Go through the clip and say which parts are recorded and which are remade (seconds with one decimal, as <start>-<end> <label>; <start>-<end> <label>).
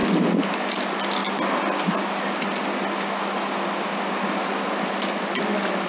0.0-5.9 recorded